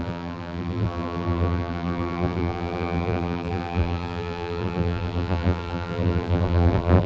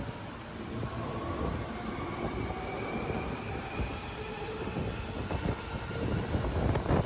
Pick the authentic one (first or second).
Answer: second